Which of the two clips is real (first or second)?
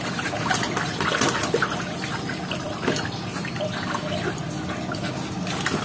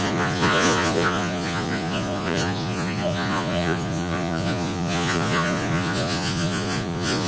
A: first